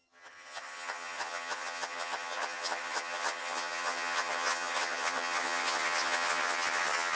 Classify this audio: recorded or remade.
remade